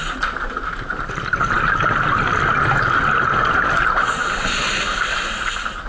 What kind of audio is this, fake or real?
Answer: real